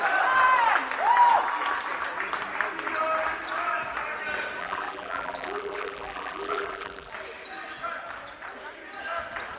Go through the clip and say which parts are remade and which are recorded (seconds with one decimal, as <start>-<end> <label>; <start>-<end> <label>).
0.0-4.6 recorded; 4.6-7.1 remade; 7.1-9.6 recorded